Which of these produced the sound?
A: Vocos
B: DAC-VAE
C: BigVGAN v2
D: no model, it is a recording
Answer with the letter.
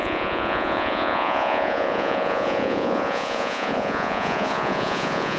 A